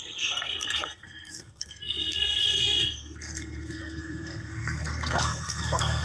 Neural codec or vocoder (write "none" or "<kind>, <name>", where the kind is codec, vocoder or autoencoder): codec, SNAC